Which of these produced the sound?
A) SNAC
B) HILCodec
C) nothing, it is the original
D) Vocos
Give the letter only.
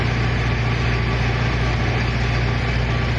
C